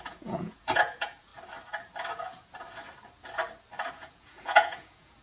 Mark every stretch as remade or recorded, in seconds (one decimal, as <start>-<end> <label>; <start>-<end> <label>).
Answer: 0.0-1.3 remade; 1.3-3.9 recorded; 3.9-5.2 remade

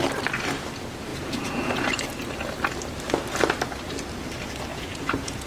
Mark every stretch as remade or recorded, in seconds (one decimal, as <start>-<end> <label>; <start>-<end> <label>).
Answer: 0.0-1.1 recorded; 1.1-1.9 remade; 1.9-4.7 recorded; 4.7-5.5 remade

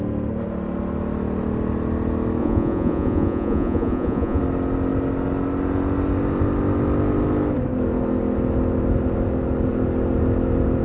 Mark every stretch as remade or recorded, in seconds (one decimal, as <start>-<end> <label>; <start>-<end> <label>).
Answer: 0.0-2.4 recorded; 2.4-4.4 remade; 4.4-10.8 recorded

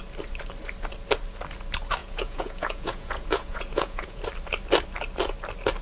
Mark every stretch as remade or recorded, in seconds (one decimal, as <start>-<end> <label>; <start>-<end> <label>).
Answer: 0.0-2.0 recorded; 2.0-4.2 remade; 4.2-5.8 recorded

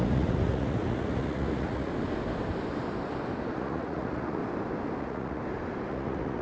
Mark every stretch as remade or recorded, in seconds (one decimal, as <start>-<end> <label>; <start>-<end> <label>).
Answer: 0.0-1.9 remade; 1.9-3.5 recorded; 3.5-4.4 remade; 4.4-5.0 recorded; 5.0-5.4 remade; 5.4-5.9 recorded; 5.9-6.4 remade

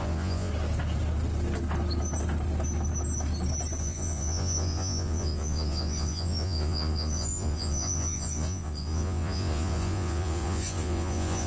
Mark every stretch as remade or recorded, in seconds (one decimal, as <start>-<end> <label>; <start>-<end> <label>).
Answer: 0.0-0.5 remade; 0.5-3.8 recorded; 3.8-11.5 remade

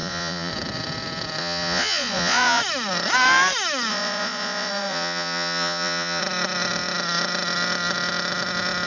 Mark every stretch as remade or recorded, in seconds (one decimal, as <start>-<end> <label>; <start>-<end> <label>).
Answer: 0.0-0.5 remade; 0.5-1.4 recorded; 1.4-2.6 remade; 2.6-3.9 recorded; 3.9-6.2 remade; 6.2-8.9 recorded

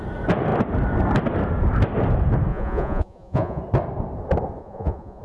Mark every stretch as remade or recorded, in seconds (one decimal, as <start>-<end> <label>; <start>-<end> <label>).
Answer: 0.0-2.5 recorded; 2.5-3.6 remade; 3.6-4.6 recorded; 4.6-5.2 remade